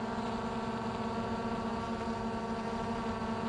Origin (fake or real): real